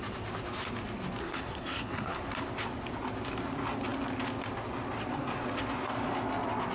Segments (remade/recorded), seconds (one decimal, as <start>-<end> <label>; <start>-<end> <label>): 0.0-1.2 recorded; 1.2-2.2 remade; 2.2-6.7 recorded